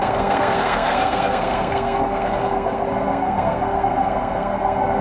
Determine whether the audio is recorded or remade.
remade